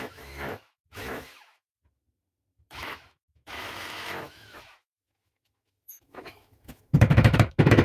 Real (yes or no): no